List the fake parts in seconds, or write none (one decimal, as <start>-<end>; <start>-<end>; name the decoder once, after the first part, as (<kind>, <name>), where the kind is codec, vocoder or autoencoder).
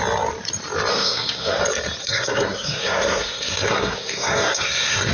0.9-1.6 (codec, SNAC); 2.0-5.1